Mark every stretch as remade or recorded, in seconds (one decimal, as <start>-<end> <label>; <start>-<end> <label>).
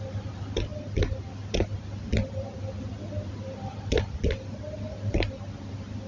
0.0-6.1 recorded